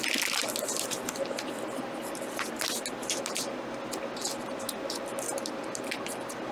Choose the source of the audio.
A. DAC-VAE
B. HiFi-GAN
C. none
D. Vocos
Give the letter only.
C